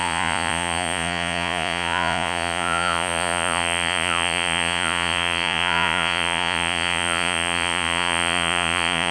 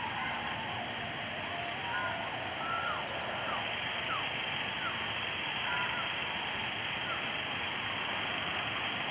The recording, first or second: second